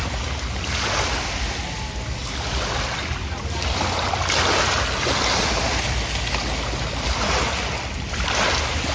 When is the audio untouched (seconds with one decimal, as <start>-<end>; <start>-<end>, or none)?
0.0-8.9